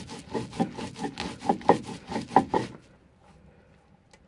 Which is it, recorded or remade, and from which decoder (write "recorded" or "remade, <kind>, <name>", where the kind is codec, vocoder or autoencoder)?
recorded